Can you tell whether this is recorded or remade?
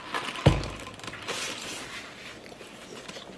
recorded